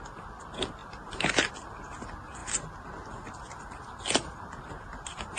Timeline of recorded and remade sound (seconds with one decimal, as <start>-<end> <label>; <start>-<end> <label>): 0.0-5.4 recorded